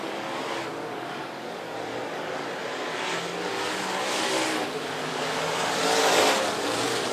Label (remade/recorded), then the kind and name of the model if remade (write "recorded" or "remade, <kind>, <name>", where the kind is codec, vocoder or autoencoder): remade, codec, DAC